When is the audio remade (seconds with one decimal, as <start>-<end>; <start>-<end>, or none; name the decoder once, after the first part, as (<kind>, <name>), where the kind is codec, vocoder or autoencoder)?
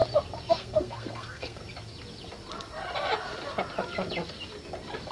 0.5-1.6 (codec, SNAC)